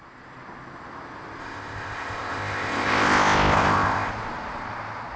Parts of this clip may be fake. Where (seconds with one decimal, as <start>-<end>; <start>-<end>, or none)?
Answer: 1.4-4.1